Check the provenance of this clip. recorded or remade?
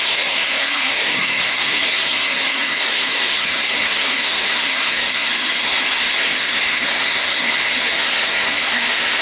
remade